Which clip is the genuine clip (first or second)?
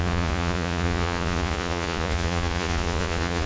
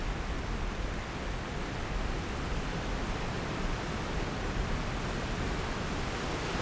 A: second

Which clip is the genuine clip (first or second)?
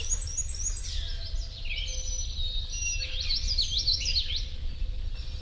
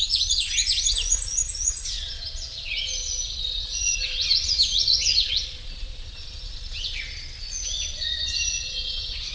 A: first